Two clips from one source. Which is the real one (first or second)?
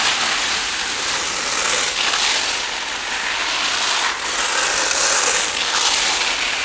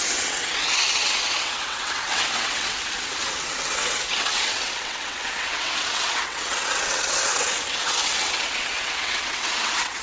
first